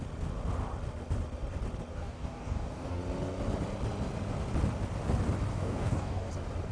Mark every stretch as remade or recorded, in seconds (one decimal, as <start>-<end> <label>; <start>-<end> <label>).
0.0-1.9 recorded; 1.9-3.0 remade; 3.0-5.5 recorded; 5.5-6.3 remade; 6.3-6.7 recorded